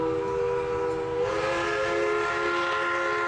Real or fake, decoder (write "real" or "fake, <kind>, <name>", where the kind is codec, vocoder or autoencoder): real